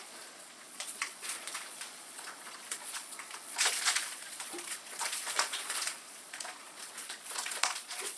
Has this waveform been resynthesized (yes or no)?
yes